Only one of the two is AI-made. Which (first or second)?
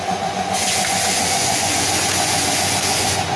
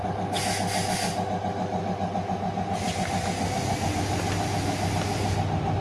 first